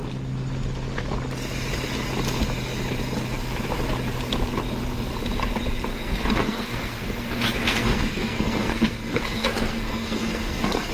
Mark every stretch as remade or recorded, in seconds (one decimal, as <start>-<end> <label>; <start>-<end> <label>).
0.0-5.9 recorded; 5.9-10.9 remade